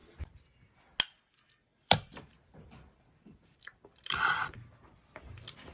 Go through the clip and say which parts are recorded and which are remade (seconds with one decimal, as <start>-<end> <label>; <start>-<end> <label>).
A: 0.0-1.7 recorded; 1.7-5.0 remade; 5.0-5.7 recorded